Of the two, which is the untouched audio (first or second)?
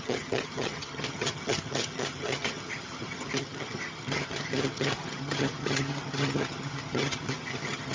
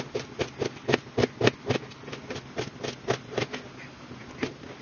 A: second